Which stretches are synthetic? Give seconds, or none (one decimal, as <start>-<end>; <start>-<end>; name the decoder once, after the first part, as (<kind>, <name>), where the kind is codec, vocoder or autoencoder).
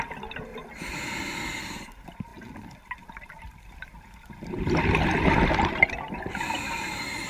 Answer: 0.0-0.5 (vocoder, BigVGAN v2); 1.6-7.3